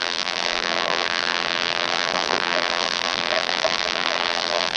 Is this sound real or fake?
fake